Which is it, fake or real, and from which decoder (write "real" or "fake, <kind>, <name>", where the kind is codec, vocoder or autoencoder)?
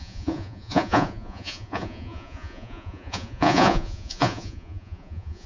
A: fake, vocoder, Vocos